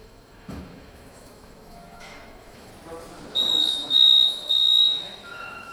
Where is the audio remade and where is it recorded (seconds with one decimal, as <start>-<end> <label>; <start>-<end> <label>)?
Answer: 0.0-2.7 remade; 2.7-3.5 recorded; 3.5-5.7 remade